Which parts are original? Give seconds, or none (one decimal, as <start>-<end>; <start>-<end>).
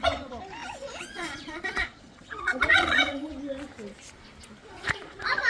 0.0-0.6; 3.3-4.6